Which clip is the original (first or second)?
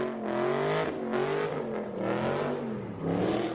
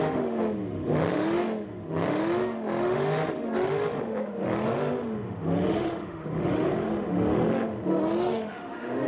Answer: first